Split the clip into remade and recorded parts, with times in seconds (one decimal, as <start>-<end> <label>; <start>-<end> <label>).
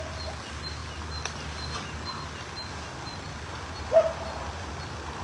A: 0.0-5.2 recorded